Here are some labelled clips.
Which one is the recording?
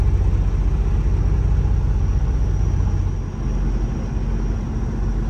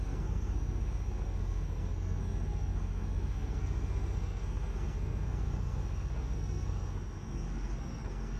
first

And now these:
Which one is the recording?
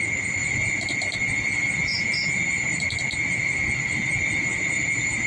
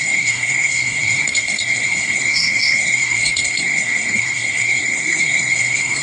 first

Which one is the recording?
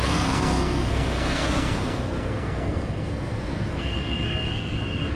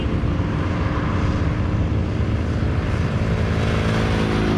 second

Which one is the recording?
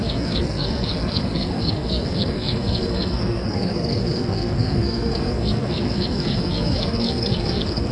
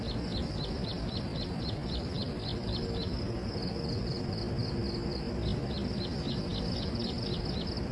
second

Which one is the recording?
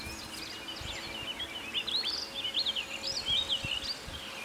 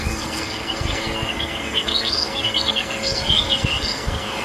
first